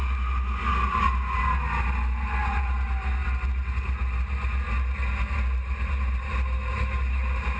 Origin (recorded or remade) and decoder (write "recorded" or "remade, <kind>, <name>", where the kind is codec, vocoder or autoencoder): recorded